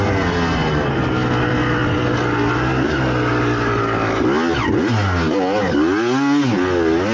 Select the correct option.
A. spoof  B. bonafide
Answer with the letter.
B